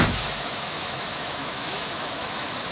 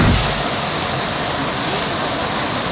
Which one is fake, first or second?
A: first